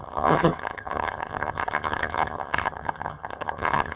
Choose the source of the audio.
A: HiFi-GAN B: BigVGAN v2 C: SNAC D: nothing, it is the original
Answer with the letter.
A